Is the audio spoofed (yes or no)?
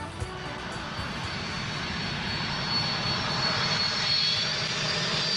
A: no